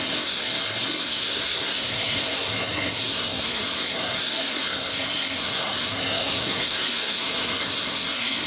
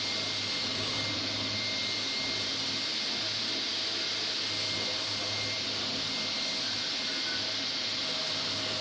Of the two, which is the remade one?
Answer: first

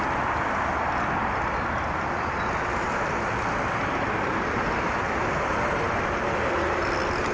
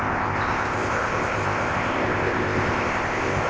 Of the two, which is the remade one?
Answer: second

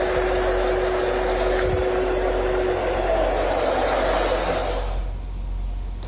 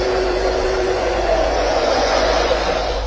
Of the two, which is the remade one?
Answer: second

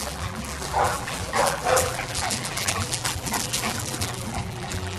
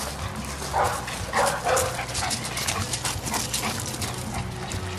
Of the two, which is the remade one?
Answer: first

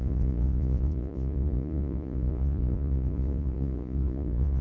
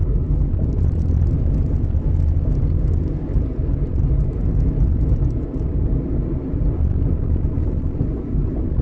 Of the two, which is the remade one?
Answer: first